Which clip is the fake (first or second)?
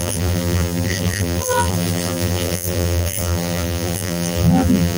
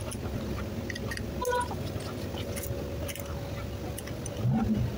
first